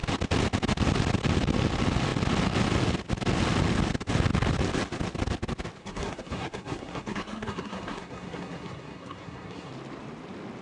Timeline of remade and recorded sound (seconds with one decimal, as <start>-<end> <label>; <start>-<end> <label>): 0.0-5.8 recorded; 5.8-9.7 remade; 9.7-10.6 recorded